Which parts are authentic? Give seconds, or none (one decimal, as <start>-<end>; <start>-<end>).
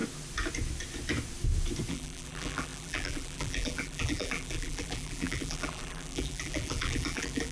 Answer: 0.0-1.9